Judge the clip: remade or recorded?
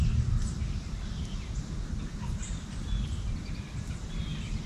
recorded